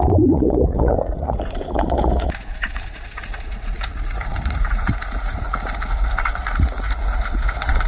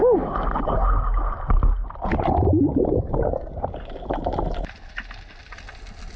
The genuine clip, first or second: second